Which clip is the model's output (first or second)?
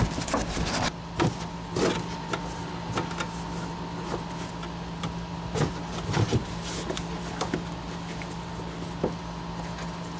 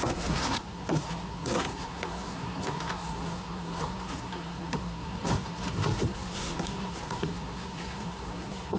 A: second